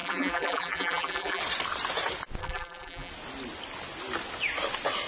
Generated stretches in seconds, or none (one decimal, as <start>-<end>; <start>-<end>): 0.0-1.4; 2.4-3.1